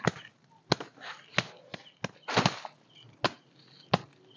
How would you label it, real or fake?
real